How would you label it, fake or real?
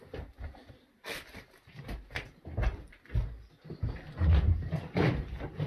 real